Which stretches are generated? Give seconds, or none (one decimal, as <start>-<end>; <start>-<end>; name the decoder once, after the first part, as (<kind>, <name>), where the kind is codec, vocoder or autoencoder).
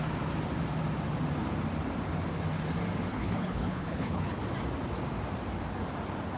3.1-4.4 (codec, HILCodec)